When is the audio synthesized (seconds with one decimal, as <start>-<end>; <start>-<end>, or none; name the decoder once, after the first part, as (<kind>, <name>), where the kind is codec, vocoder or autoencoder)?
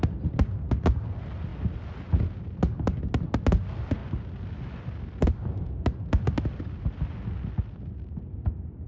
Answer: none